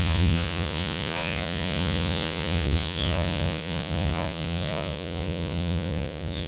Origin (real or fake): fake